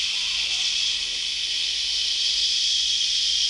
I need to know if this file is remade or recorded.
recorded